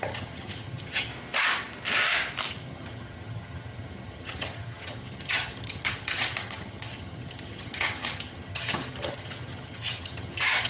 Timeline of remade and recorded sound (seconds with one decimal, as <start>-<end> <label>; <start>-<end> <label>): 0.0-1.1 remade; 1.1-2.5 recorded; 2.5-10.7 remade

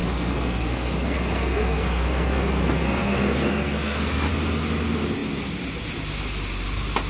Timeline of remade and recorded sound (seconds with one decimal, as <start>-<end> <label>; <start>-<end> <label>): 0.0-4.3 remade; 4.3-7.1 recorded

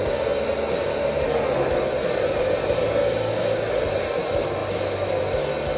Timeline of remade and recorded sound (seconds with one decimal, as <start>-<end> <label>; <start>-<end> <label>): 0.0-3.0 recorded; 3.0-3.7 remade; 3.7-5.8 recorded

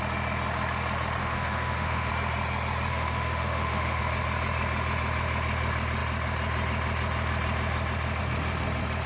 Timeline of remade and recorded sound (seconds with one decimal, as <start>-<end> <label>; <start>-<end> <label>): 0.0-1.2 recorded; 1.2-2.1 remade; 2.1-2.9 recorded; 2.9-4.0 remade; 4.0-9.1 recorded

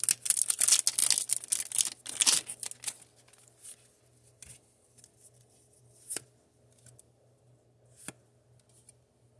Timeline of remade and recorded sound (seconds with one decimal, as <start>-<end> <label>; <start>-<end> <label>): 0.0-9.4 recorded